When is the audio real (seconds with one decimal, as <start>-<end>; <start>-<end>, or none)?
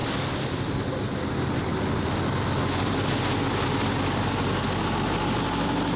0.0-6.0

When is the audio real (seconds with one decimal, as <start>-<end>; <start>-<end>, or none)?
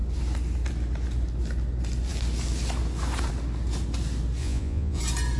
0.0-4.4; 5.0-5.4